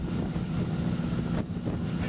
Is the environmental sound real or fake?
real